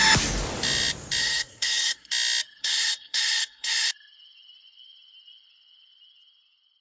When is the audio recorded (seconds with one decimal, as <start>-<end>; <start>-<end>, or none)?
0.0-1.2; 2.1-2.6; 3.9-6.8